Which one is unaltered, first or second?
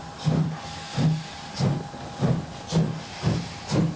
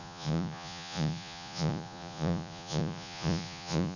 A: first